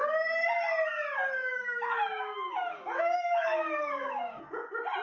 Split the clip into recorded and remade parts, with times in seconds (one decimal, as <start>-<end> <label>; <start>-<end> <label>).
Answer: 0.0-1.4 recorded; 1.4-4.4 remade; 4.4-5.0 recorded